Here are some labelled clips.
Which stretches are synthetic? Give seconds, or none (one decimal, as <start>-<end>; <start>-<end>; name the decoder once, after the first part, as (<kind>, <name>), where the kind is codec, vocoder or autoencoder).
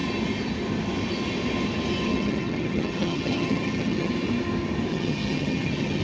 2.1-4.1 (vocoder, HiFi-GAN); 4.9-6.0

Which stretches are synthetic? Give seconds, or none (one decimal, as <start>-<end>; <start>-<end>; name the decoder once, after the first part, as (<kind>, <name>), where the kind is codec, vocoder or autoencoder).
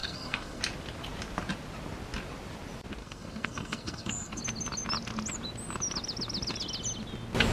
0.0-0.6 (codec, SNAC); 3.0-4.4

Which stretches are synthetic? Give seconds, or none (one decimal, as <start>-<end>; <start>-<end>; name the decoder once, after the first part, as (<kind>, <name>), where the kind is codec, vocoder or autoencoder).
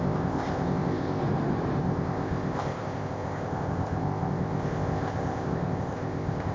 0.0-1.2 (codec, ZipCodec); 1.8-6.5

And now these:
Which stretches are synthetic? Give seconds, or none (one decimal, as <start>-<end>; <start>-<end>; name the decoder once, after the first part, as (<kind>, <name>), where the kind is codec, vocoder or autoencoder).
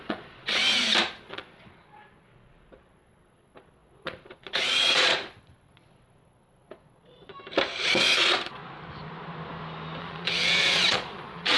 0.0-0.6 (vocoder, Vocos); 1.1-7.3; 7.9-8.6; 10.0-11.6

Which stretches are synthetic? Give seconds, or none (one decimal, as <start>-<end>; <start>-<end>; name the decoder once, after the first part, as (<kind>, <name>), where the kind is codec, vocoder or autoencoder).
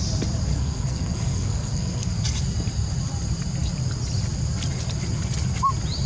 0.5-2.1 (codec, SNAC)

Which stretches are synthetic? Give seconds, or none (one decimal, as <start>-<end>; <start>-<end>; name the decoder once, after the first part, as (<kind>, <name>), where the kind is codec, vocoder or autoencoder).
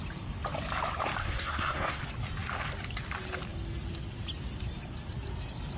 1.2-2.0 (codec, SNAC)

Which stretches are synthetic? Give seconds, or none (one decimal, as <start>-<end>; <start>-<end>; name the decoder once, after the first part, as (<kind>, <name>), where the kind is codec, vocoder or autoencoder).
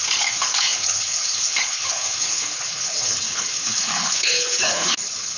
0.0-5.4 (codec, HILCodec)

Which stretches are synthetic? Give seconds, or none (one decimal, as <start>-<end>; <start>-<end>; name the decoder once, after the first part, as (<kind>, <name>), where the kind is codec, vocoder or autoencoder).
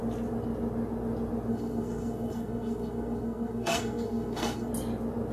1.5-4.7 (codec, SNAC)